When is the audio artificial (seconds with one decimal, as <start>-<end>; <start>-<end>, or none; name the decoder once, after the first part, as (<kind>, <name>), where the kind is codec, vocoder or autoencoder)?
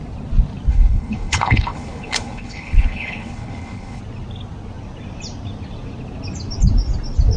0.7-4.0 (codec, HILCodec)